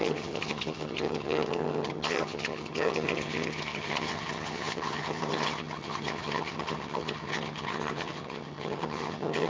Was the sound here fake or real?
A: fake